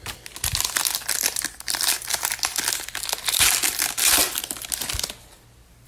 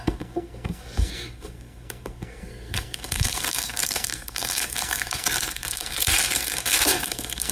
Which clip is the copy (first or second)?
second